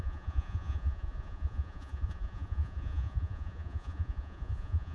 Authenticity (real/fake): fake